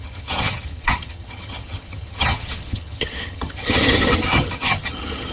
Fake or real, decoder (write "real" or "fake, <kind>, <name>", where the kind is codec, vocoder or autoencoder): fake, vocoder, HiFi-GAN